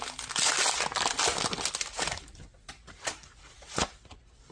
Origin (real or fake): real